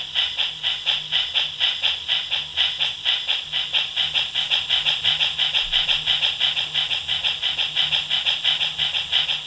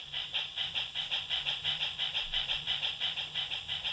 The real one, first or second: first